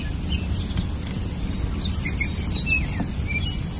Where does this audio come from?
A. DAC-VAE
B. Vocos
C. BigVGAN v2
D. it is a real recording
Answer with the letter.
D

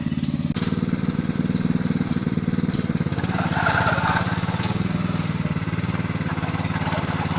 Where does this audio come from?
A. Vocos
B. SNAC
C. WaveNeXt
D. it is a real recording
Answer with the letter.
D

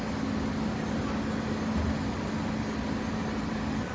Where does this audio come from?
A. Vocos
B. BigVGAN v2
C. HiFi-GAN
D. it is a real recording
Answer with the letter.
D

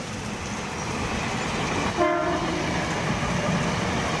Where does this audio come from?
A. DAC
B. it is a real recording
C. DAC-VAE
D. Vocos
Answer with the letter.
B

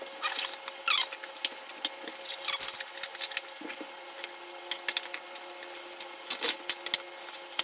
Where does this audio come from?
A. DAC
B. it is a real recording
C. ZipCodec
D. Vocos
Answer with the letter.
B